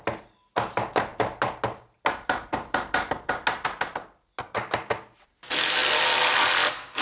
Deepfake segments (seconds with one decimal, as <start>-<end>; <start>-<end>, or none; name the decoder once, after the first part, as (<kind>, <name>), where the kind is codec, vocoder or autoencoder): none